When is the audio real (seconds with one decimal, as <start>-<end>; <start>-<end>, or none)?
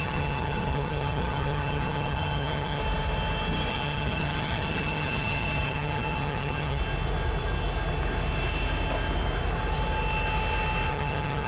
2.8-3.7; 6.8-10.9